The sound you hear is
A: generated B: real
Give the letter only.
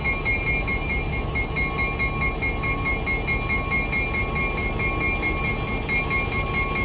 B